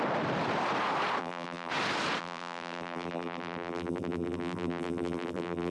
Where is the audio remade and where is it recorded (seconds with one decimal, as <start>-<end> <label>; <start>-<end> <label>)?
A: 0.0-1.2 recorded; 1.2-1.7 remade; 1.7-2.2 recorded; 2.2-5.7 remade